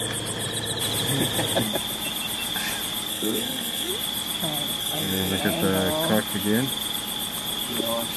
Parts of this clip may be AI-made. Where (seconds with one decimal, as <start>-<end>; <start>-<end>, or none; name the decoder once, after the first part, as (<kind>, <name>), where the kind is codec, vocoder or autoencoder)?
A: 3.1-3.9 (codec, SNAC); 4.8-5.4